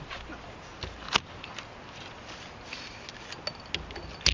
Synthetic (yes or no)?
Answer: no